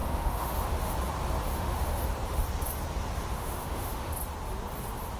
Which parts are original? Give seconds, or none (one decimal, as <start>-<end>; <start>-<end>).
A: 0.9-1.5; 2.0-3.3; 4.1-5.2